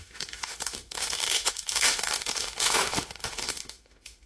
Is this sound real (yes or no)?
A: no